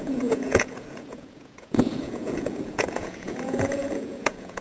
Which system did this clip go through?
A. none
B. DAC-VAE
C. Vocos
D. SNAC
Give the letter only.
C